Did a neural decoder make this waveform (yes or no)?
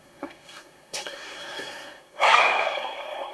yes